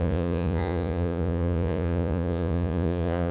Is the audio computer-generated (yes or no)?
yes